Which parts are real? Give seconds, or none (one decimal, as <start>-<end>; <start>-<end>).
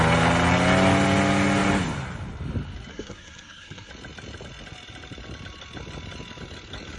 0.0-2.9; 3.9-7.0